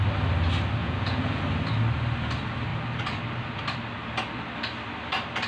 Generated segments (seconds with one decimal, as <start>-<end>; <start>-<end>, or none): 0.8-1.4

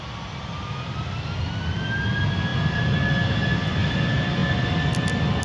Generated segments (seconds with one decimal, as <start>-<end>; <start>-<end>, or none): none

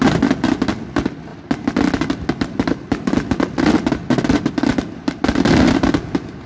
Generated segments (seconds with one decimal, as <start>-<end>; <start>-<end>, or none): none

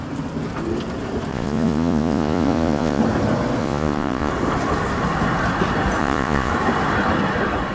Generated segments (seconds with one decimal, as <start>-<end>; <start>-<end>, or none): 1.3-3.0; 3.6-4.3; 6.0-6.5

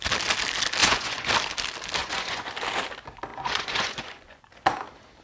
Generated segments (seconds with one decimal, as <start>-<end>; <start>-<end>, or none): 0.8-1.3; 2.0-2.5; 3.3-4.5

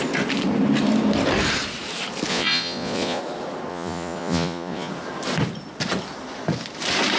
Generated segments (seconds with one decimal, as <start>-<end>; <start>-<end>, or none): 2.3-3.2; 3.7-4.9

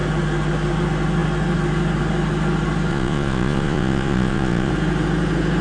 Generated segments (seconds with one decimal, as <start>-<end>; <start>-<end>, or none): 2.9-4.7